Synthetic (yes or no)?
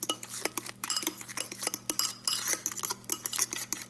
no